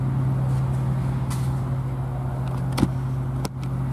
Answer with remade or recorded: recorded